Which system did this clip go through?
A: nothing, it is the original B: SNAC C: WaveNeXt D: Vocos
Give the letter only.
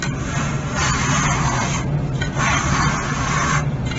A